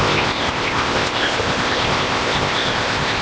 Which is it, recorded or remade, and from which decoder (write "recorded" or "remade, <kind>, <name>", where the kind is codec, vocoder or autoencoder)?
remade, codec, ZipCodec